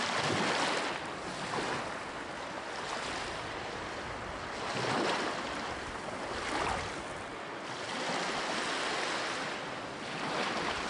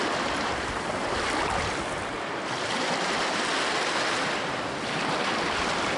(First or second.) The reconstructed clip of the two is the second